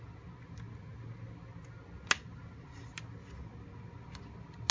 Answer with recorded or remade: recorded